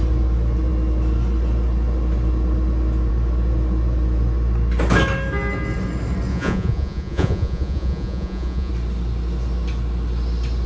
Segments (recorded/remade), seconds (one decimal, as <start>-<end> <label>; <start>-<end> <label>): 0.0-6.3 recorded; 6.3-8.7 remade; 8.7-10.7 recorded